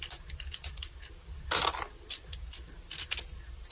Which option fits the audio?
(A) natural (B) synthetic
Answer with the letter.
A